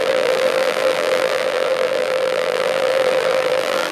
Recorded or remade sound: remade